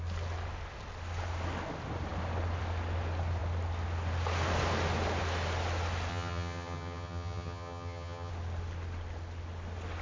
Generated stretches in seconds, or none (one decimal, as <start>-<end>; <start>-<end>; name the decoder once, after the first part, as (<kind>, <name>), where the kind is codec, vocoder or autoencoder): 6.1-8.3 (vocoder, HiFi-GAN)